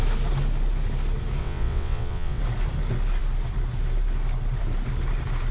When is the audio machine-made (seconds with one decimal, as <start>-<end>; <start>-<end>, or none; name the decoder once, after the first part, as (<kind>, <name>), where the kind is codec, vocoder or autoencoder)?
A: 1.4-2.4 (vocoder, WaveNeXt)